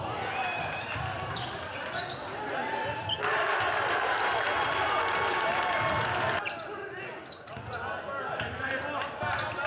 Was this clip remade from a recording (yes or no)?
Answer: no